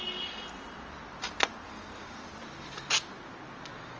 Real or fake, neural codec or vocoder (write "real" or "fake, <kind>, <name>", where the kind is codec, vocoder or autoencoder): real